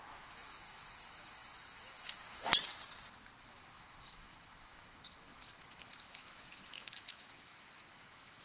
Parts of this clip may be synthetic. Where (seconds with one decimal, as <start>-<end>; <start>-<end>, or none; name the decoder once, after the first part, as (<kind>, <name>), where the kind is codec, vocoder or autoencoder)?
0.0-2.5 (autoencoder, DAC-VAE); 3.4-8.4

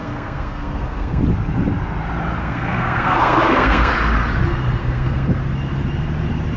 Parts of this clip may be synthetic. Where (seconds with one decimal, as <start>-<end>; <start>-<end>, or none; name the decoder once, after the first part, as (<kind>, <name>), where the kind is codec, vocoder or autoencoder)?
0.0-1.2 (codec, SNAC); 2.4-3.9; 4.8-5.4

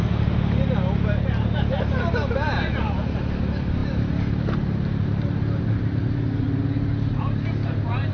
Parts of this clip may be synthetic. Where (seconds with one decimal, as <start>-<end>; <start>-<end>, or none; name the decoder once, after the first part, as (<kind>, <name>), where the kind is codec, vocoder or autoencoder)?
none

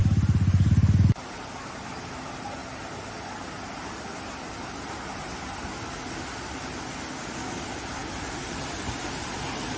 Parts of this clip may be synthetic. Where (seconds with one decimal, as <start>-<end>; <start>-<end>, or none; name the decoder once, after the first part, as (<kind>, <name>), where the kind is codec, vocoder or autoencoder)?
none